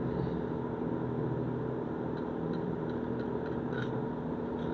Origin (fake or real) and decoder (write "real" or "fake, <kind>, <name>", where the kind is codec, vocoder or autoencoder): real